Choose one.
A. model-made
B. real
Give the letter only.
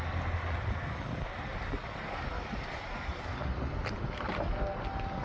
B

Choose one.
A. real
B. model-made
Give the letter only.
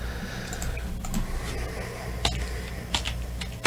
A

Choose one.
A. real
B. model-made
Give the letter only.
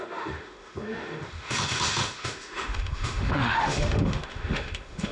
B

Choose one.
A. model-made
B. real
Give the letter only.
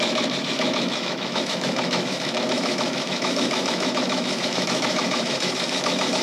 A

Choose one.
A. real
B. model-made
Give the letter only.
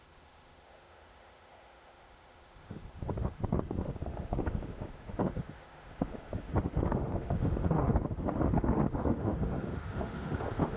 B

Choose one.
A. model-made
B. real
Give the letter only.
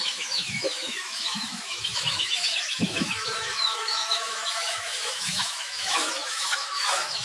A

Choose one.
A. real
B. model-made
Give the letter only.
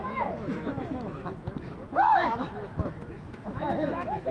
B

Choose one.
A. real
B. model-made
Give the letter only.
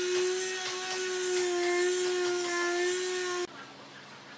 A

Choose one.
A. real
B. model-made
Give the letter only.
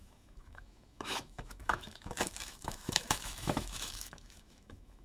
B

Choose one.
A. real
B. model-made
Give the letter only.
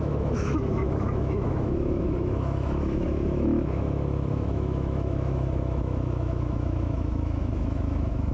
B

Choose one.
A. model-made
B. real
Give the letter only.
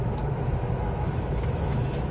A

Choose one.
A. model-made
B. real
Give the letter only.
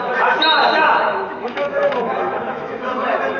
A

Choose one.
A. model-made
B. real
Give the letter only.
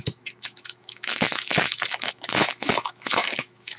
A